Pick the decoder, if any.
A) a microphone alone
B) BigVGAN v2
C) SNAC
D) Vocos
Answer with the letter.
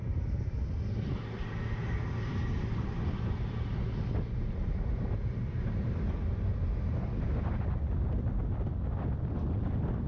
A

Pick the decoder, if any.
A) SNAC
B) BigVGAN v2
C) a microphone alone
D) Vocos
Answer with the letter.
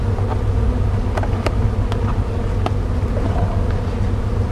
C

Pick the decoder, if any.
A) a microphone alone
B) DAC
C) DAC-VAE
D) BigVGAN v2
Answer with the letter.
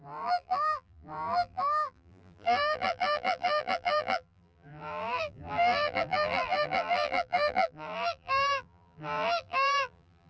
D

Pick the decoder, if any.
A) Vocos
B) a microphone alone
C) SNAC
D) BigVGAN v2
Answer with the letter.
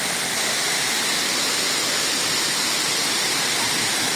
B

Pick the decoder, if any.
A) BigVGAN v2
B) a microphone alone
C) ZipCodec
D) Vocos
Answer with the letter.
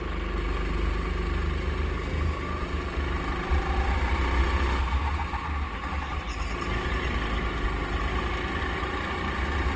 B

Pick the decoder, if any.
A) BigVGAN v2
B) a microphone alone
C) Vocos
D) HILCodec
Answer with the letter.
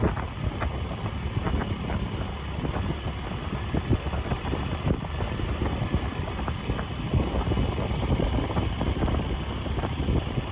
B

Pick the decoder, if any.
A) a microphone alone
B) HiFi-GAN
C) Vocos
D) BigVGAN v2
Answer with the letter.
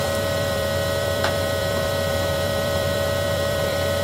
D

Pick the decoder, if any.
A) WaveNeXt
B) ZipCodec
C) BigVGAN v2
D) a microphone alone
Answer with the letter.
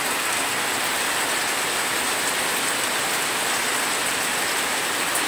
D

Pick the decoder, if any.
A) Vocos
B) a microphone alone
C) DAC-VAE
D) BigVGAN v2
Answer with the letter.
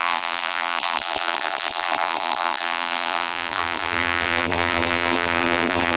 D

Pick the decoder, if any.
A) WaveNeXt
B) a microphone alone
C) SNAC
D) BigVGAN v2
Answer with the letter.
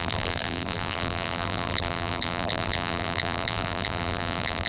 D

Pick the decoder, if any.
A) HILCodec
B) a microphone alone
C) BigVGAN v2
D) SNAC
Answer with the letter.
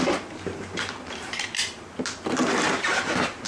C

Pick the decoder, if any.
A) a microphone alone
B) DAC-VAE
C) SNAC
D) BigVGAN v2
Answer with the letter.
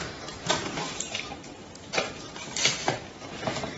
D